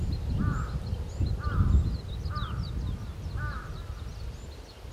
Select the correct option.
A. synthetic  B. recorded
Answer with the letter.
B